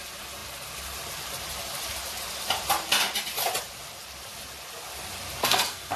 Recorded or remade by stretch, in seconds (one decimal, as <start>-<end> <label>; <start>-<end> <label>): 0.0-5.4 recorded; 5.4-6.0 remade